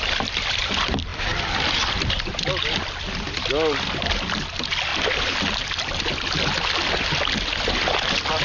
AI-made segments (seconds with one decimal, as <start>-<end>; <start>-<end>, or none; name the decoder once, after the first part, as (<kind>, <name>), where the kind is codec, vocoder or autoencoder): none